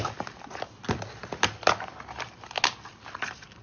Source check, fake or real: real